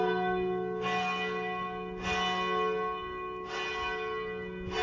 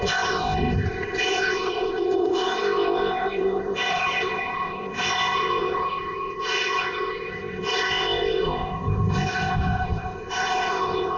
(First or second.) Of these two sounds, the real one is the first